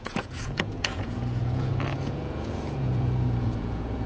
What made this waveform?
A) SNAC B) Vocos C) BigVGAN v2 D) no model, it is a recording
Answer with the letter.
B